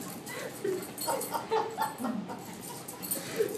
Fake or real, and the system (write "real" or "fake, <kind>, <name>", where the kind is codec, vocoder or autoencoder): real